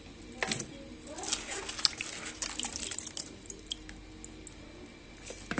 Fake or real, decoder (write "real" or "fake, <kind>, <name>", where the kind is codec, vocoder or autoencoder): real